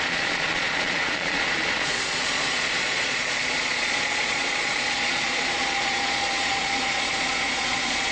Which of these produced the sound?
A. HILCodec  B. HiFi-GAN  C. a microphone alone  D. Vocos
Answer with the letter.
D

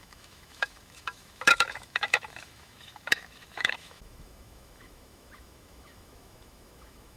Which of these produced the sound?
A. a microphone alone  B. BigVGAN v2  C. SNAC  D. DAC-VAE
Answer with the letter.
D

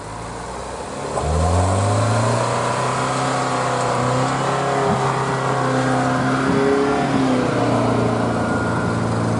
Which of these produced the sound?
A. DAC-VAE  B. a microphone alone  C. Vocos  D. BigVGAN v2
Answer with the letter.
B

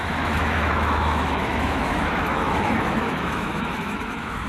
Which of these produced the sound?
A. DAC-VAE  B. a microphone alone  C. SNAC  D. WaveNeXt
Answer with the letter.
A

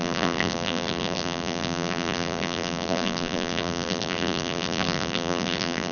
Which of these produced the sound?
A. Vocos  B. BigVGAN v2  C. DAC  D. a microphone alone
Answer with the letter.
B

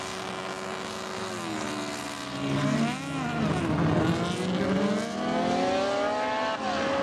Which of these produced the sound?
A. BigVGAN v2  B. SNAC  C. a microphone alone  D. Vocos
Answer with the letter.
C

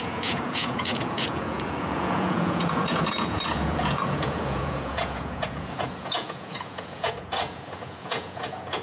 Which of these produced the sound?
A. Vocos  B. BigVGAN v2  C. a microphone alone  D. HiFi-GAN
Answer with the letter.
A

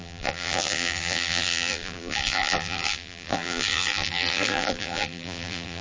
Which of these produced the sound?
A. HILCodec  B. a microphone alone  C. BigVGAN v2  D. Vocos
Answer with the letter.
C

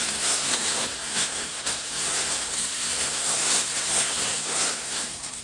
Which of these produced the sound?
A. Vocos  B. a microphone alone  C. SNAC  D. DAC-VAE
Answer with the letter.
C